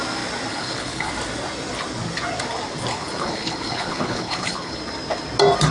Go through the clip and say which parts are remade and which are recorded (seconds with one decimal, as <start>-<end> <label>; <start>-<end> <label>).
0.0-0.5 recorded; 0.5-1.1 remade; 1.1-2.9 recorded; 2.9-4.8 remade; 4.8-5.7 recorded